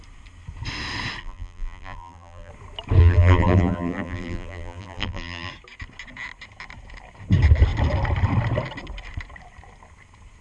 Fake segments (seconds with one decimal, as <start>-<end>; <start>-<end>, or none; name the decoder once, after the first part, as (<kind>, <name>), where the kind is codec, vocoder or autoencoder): 1.2-2.5 (vocoder, BigVGAN v2); 3.0-5.5